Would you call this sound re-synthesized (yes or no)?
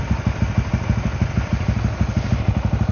no